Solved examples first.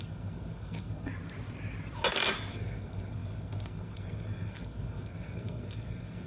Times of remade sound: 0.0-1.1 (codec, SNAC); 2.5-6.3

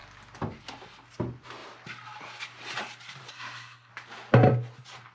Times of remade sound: 3.3-3.9 (codec, SNAC)

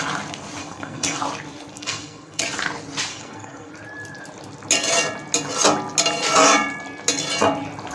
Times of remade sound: 0.6-1.2 (codec, SNAC); 1.7-2.4; 3.1-3.7

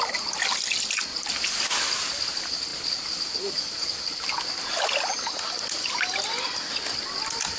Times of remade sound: none